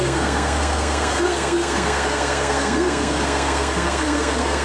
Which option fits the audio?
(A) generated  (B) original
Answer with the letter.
A